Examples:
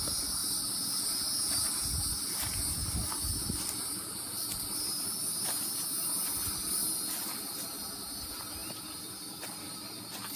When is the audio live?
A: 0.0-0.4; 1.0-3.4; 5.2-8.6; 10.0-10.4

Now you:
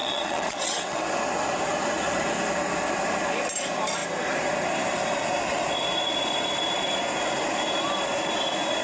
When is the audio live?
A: 1.0-8.8

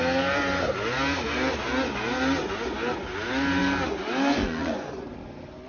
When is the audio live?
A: 0.0-4.4; 5.1-5.7

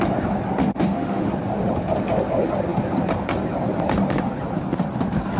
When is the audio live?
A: 0.0-0.6; 1.3-5.4

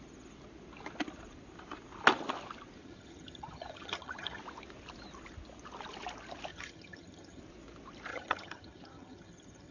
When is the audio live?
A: 0.0-2.8; 4.4-6.5; 7.4-8.1

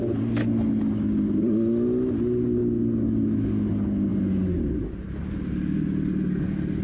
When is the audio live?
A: 0.0-6.8

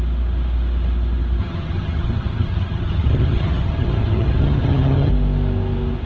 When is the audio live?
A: 0.0-1.4; 5.1-6.1

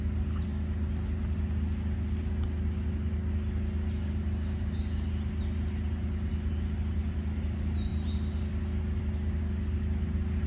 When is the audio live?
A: 0.0-10.5